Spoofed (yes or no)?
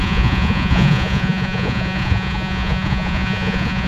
yes